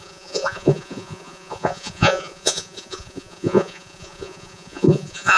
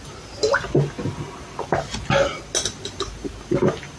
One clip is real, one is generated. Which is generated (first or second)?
first